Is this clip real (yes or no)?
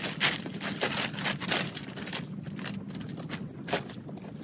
yes